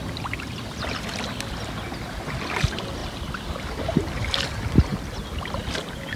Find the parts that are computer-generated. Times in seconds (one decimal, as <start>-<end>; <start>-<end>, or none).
none